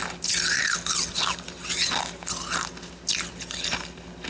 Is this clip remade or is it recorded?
recorded